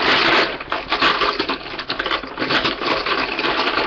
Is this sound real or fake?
real